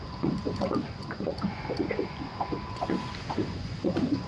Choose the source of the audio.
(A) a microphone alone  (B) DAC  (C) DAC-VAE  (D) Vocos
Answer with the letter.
D